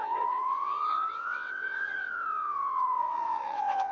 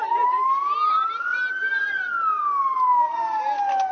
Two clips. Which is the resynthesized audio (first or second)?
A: first